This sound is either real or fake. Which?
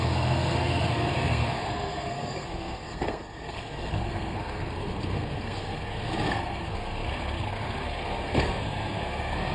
fake